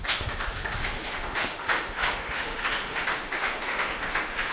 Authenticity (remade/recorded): remade